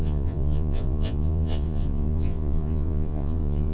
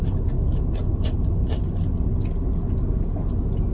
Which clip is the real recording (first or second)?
second